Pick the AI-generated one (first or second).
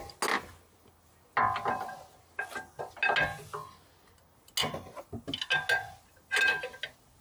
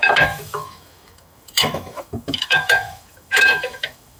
second